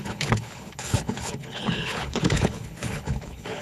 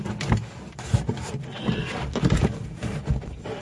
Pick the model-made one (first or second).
first